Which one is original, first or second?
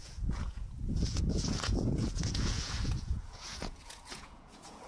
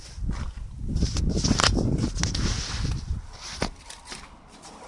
second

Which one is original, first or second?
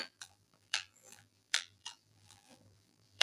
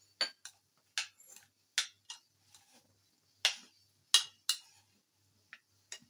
second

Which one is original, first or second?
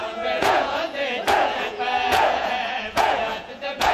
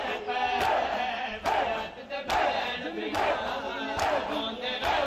second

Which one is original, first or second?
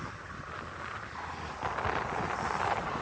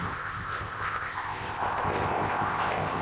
first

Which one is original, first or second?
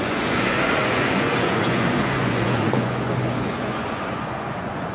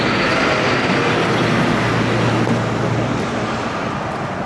second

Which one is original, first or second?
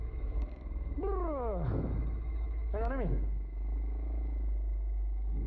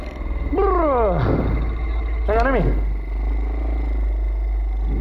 second